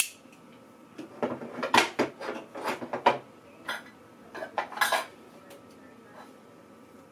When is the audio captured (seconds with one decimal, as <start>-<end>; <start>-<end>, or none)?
0.0-7.1